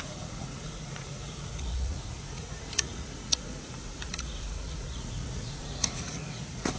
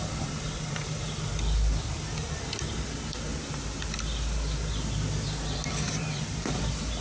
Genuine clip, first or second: second